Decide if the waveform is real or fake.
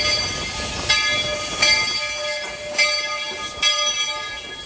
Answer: real